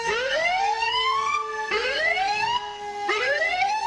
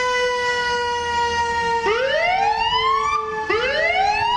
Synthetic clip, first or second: first